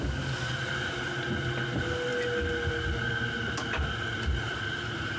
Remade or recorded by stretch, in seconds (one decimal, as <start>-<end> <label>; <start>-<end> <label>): 0.0-4.5 recorded; 4.5-5.2 remade